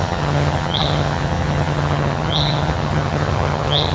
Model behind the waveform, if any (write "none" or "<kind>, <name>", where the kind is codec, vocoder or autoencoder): vocoder, HiFi-GAN